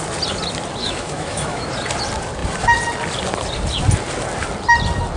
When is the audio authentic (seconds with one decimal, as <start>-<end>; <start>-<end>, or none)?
0.0-0.8; 1.7-5.2